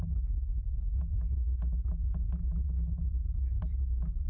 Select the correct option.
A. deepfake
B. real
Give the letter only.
B